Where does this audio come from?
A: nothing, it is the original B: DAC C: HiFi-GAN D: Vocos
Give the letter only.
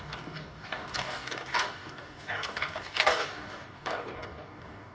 B